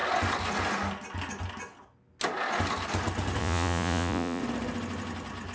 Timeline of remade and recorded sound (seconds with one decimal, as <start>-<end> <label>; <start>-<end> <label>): 0.0-3.4 recorded; 3.4-4.4 remade; 4.4-5.5 recorded